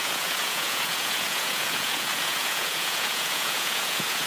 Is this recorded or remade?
remade